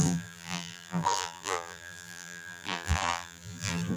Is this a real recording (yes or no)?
no